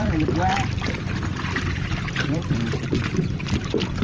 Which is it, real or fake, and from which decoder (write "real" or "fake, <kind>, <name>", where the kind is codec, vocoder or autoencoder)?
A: fake, vocoder, BigVGAN v2